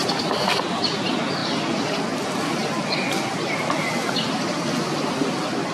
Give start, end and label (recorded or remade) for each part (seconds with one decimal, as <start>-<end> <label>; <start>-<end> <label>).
0.0-5.7 recorded